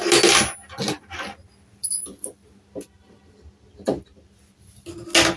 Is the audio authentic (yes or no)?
yes